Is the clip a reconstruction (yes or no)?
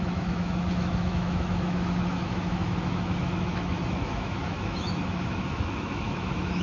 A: yes